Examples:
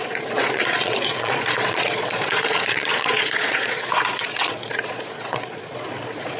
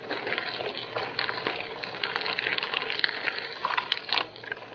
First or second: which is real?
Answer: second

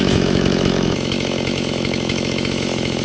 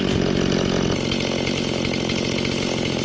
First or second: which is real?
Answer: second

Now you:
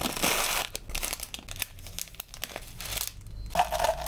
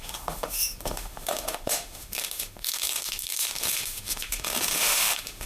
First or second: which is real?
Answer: first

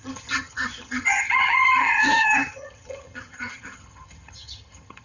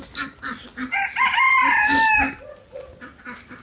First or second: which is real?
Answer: second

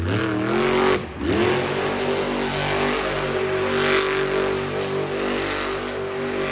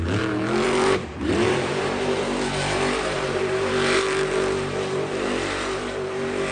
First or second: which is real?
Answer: first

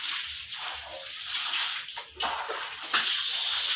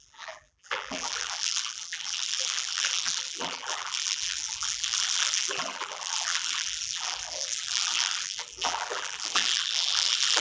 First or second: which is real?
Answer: first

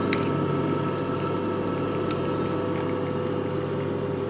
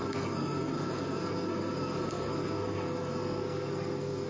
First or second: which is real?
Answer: first